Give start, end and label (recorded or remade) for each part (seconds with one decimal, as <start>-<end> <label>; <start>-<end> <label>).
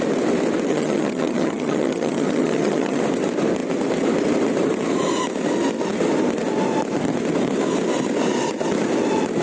0.0-0.7 recorded; 0.7-3.0 remade; 3.0-9.4 recorded